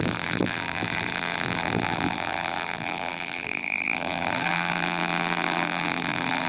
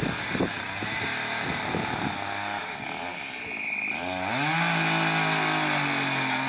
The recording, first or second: second